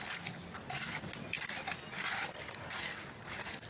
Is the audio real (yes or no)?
yes